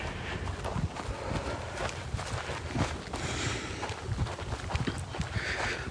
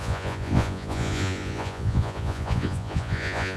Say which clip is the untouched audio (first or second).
first